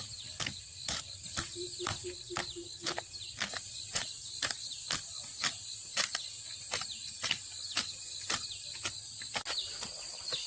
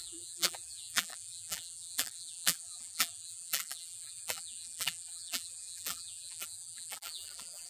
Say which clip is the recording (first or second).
first